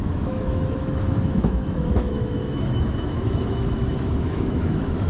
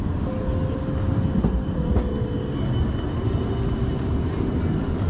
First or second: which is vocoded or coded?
first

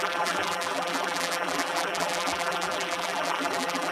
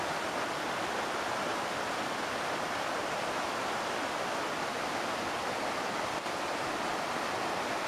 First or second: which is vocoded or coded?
first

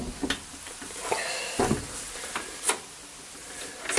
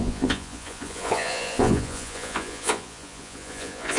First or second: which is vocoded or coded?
second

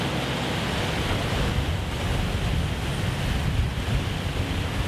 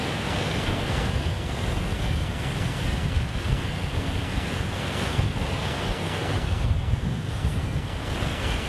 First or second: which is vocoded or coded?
second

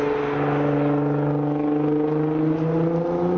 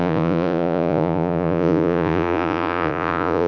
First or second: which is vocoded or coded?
second